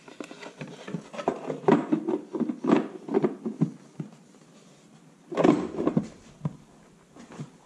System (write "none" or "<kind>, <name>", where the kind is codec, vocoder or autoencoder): none